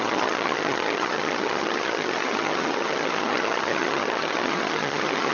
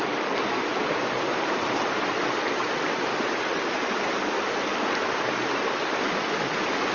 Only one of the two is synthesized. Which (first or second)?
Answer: first